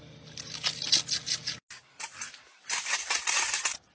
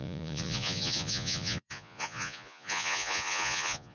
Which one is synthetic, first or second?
second